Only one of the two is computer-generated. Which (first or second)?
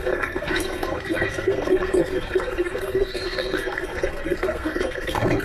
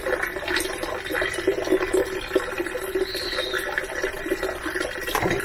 first